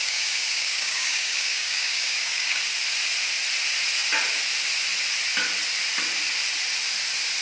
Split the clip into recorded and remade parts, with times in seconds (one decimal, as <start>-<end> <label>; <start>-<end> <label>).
0.0-2.6 remade; 2.6-7.4 recorded